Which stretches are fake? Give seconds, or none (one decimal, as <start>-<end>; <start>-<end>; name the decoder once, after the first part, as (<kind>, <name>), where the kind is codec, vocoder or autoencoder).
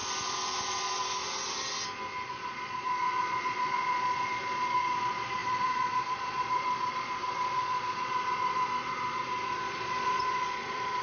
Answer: 2.3-11.0 (vocoder, Vocos)